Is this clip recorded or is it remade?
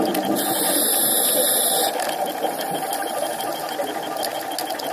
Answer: recorded